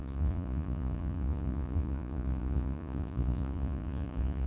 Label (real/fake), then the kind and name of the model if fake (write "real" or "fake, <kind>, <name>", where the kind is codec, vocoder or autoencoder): fake, vocoder, Vocos